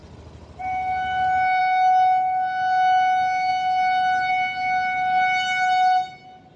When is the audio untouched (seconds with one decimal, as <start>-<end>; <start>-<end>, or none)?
0.0-6.6